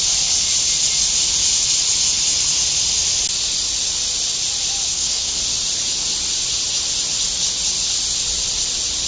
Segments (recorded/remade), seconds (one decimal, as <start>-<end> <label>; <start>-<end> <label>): 0.0-4.9 recorded; 4.9-5.4 remade; 5.4-9.1 recorded